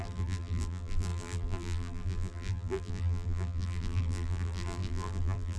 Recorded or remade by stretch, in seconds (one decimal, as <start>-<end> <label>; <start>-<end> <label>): 0.0-5.6 remade